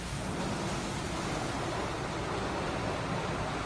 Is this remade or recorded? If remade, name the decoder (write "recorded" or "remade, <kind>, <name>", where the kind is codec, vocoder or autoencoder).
recorded